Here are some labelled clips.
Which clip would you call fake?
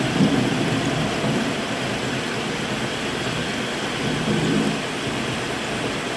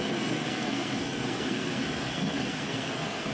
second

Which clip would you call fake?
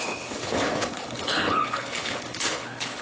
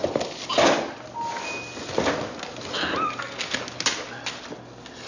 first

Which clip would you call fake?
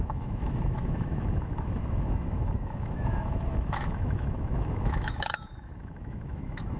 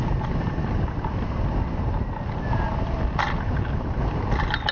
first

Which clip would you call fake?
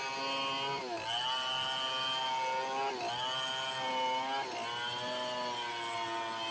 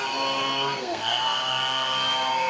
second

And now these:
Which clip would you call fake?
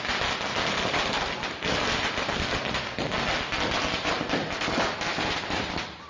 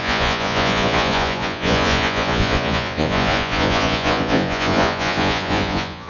second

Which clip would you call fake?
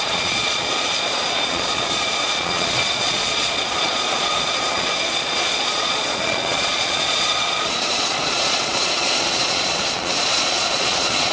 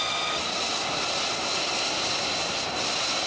first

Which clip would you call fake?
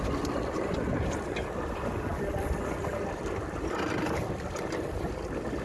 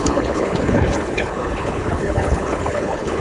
second